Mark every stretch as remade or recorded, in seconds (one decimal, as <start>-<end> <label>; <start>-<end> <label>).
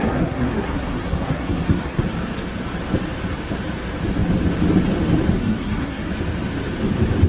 0.0-2.0 remade; 2.0-5.4 recorded; 5.4-6.1 remade; 6.1-7.3 recorded